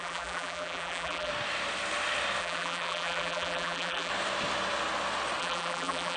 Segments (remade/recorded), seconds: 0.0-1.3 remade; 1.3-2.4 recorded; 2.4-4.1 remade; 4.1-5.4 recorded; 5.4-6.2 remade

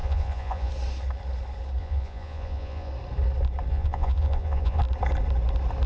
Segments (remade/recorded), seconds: 0.0-0.7 remade; 0.7-1.8 recorded; 1.8-2.9 remade; 2.9-3.7 recorded; 3.7-4.8 remade; 4.8-5.9 recorded

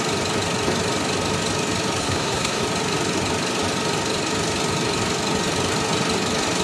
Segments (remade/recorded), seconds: 0.0-2.0 recorded; 2.0-2.6 remade; 2.6-6.6 recorded

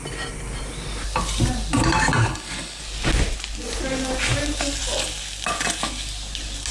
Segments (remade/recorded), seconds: 0.0-2.2 recorded; 2.2-2.8 remade; 2.8-6.7 recorded

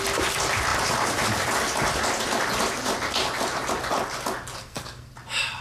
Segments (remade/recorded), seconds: 0.0-4.6 recorded; 4.6-5.1 remade; 5.1-5.6 recorded